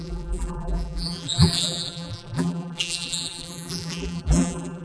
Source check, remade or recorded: remade